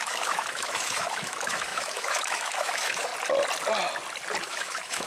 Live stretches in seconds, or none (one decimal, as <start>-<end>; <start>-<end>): 3.1-4.4